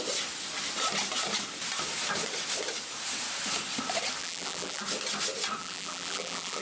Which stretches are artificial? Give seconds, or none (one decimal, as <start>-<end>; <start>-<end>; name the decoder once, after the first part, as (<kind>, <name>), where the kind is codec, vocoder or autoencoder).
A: 4.2-4.8 (vocoder, BigVGAN v2); 5.6-6.6